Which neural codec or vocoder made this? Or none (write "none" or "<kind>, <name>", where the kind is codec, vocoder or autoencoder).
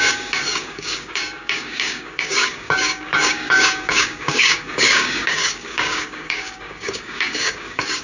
codec, DAC